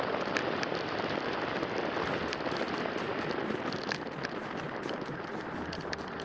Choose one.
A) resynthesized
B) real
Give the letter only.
B